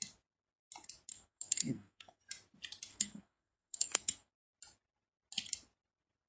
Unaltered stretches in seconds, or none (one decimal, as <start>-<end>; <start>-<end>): 0.0-1.1; 2.2-2.9; 4.3-6.3